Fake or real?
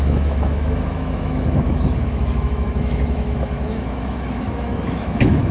fake